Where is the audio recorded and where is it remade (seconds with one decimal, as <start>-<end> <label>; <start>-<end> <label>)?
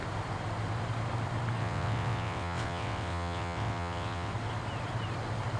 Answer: 0.0-1.6 recorded; 1.6-4.3 remade; 4.3-5.6 recorded